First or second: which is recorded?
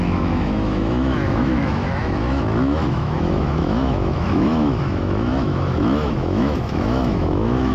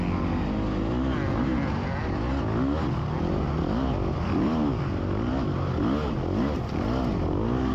second